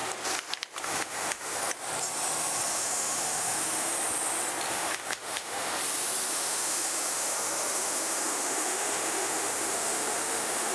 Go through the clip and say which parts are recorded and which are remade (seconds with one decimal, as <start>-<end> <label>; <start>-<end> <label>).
0.0-0.8 recorded; 0.8-1.6 remade; 1.6-2.7 recorded; 2.7-3.9 remade; 3.9-4.7 recorded; 4.7-5.8 remade; 5.8-6.3 recorded; 6.3-10.7 remade